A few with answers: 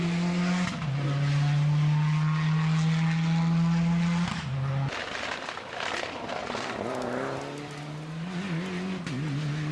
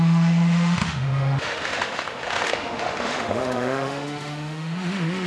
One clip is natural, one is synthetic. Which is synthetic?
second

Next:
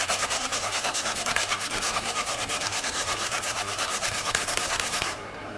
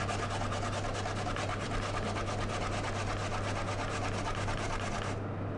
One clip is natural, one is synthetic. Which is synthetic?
first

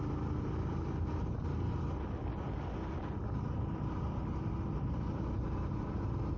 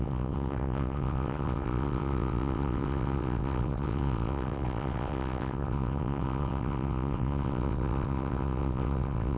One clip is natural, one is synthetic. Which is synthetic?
second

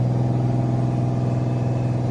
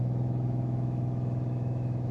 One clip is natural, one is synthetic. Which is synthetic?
second